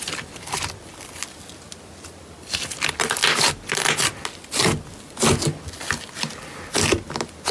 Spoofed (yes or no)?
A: no